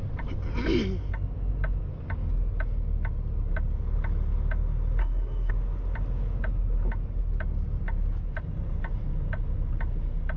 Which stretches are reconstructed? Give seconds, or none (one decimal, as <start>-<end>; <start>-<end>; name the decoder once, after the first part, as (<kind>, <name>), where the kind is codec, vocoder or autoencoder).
5.0-5.5 (codec, SNAC)